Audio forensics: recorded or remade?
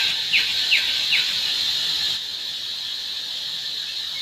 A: recorded